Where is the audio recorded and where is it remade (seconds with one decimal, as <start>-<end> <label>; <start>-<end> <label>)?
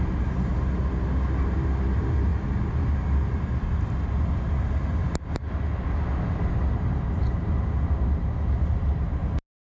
0.0-9.6 recorded